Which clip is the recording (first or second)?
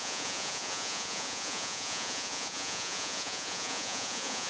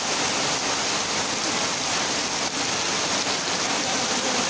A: second